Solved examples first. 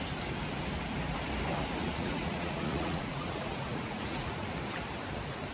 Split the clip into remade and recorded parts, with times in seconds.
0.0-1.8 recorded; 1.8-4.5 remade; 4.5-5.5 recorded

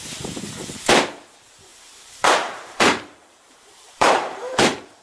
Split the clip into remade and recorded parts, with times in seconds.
0.0-1.7 recorded; 1.7-5.0 remade